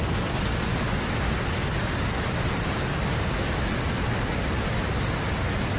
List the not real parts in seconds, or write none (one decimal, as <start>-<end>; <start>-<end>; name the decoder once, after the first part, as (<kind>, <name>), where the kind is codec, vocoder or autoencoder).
none